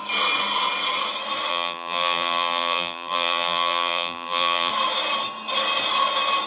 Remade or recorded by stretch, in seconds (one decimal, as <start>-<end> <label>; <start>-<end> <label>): 0.0-1.5 recorded; 1.5-4.7 remade; 4.7-6.5 recorded

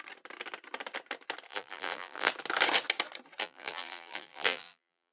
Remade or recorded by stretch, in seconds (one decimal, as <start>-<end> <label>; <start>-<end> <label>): 0.0-1.5 recorded; 1.5-2.3 remade; 2.3-3.4 recorded; 3.4-5.1 remade

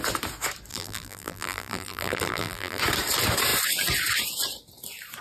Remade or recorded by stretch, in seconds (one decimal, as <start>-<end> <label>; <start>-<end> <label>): 0.0-0.7 recorded; 0.7-2.8 remade; 2.8-5.2 recorded

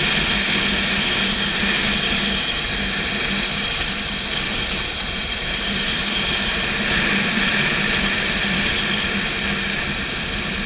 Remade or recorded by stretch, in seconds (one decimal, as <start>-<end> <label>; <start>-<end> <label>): 0.0-3.5 recorded; 3.5-8.7 remade; 8.7-10.7 recorded

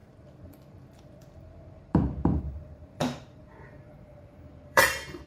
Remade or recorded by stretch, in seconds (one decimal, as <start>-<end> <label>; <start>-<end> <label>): 0.0-5.3 remade